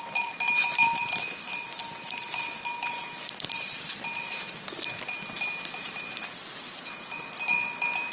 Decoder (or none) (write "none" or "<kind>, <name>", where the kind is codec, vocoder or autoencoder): none